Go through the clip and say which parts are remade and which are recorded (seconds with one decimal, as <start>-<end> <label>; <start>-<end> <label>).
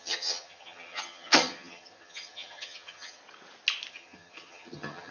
0.0-3.2 remade; 3.2-3.9 recorded; 3.9-5.1 remade